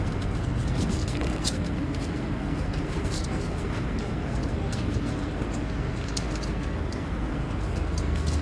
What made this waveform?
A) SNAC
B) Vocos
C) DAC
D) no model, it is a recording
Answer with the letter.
A